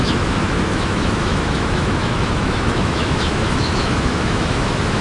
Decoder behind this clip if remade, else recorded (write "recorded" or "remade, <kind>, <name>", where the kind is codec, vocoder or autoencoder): remade, autoencoder, DAC-VAE